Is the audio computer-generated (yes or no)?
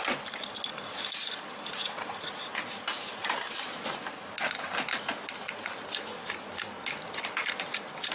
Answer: no